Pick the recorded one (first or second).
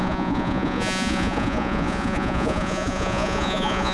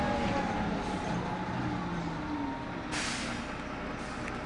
second